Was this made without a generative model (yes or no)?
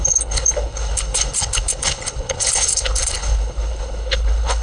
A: no